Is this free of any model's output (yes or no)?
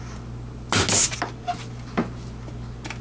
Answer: yes